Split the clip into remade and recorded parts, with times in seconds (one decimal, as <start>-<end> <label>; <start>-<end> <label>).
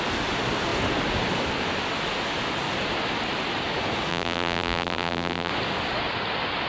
0.0-4.1 recorded; 4.1-5.5 remade; 5.5-6.7 recorded